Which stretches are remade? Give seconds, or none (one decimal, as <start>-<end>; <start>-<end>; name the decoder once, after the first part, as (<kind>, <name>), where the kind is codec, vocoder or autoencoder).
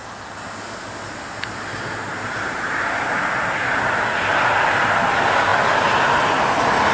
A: none